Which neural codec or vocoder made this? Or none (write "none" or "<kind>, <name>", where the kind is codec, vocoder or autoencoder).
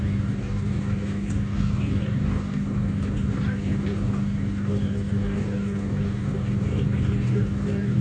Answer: codec, DAC